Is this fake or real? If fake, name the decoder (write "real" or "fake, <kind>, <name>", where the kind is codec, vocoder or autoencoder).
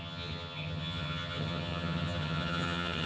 fake, vocoder, HiFi-GAN